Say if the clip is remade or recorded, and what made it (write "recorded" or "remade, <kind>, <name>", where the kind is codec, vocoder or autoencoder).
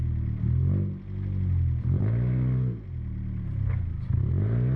recorded